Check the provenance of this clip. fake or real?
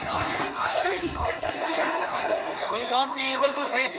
fake